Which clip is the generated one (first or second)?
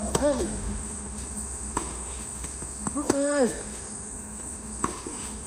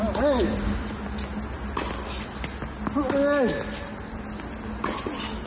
first